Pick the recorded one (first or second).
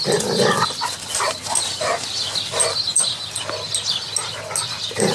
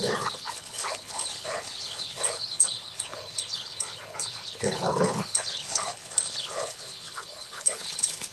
first